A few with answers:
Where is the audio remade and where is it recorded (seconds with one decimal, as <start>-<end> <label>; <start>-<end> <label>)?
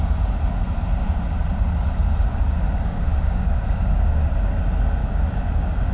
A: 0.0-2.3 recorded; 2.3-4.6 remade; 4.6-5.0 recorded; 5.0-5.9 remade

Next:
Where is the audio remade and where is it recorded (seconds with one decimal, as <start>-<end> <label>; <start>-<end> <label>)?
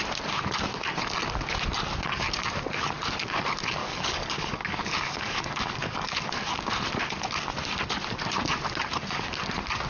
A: 0.0-3.8 recorded; 3.8-6.3 remade; 6.3-9.9 recorded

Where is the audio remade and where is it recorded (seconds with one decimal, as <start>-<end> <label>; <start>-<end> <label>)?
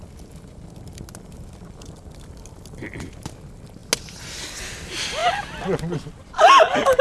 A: 0.0-7.0 recorded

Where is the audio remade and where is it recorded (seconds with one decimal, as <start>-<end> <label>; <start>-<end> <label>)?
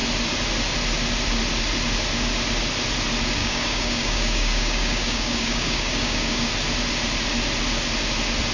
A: 0.0-3.4 recorded; 3.4-6.5 remade; 6.5-8.5 recorded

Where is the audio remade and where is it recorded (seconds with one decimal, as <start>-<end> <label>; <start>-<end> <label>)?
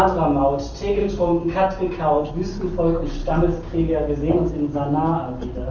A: 0.0-1.0 recorded; 1.0-2.3 remade; 2.3-3.2 recorded; 3.2-4.5 remade; 4.5-5.7 recorded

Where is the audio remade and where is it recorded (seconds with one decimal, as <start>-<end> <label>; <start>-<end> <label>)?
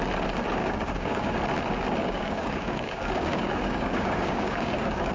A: 0.0-0.6 recorded; 0.6-1.4 remade; 1.4-2.0 recorded; 2.0-5.1 remade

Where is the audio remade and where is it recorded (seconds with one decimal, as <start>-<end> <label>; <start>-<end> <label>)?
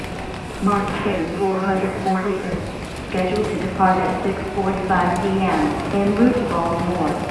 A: 0.0-0.9 recorded; 0.9-2.7 remade; 2.7-7.3 recorded